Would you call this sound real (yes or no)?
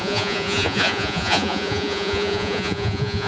no